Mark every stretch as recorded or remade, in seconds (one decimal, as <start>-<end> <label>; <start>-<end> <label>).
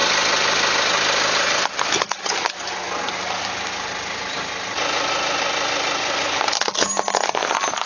0.0-6.0 recorded; 6.0-6.5 remade; 6.5-7.9 recorded